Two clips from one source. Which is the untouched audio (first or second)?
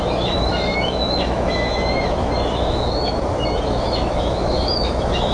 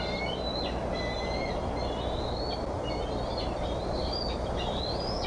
second